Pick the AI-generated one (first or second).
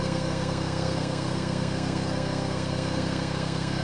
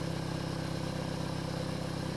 first